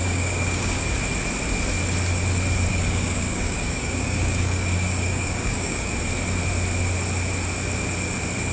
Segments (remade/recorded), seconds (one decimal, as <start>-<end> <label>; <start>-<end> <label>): 0.0-0.9 remade; 0.9-2.7 recorded; 2.7-5.9 remade; 5.9-8.5 recorded